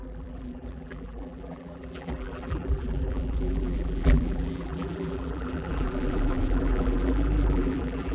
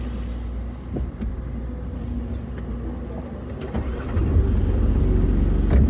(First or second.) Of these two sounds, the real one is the second